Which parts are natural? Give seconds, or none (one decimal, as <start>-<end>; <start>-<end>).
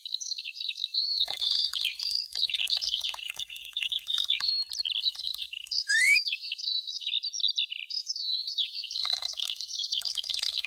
4.5-5.0; 7.1-7.9